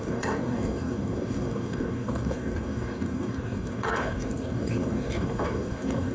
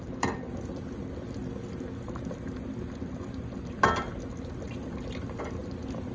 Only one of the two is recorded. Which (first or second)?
second